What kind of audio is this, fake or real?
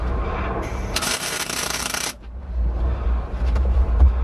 fake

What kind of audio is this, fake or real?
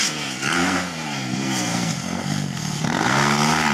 fake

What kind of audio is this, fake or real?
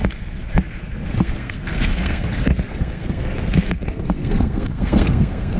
fake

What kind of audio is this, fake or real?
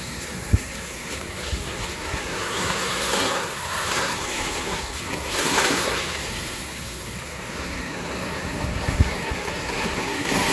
fake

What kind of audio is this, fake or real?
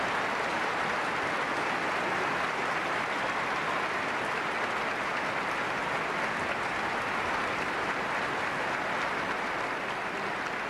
real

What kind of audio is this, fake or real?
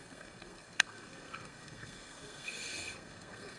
fake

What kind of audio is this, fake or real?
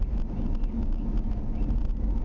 real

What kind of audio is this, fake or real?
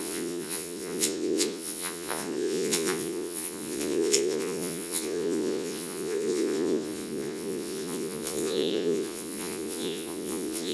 fake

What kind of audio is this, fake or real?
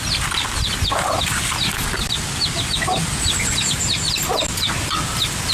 real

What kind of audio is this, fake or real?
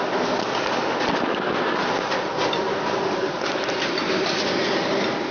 real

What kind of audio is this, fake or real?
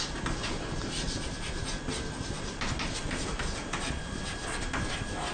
real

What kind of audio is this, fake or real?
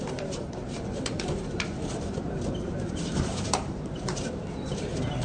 fake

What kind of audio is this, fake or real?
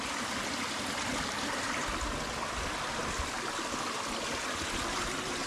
real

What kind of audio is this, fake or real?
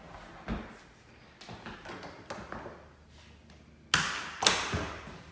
real